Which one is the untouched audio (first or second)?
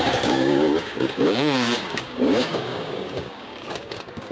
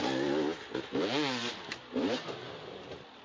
second